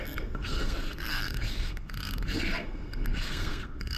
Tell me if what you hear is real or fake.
fake